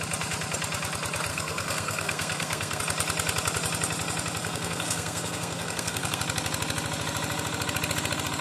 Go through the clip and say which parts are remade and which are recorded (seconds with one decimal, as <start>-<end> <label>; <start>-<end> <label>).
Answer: 0.0-1.3 recorded; 1.3-2.8 remade; 2.8-4.4 recorded; 4.4-6.2 remade; 6.2-8.4 recorded